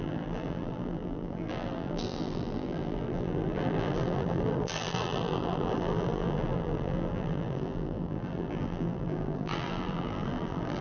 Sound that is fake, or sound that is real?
fake